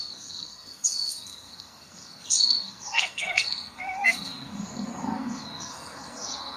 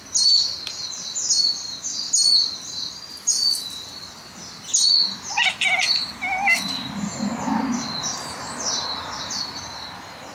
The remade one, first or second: first